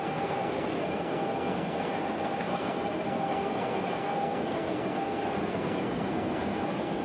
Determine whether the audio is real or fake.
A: fake